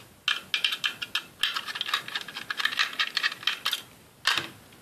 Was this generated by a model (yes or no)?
no